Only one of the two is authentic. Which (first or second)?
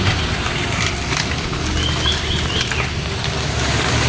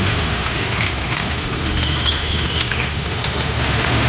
first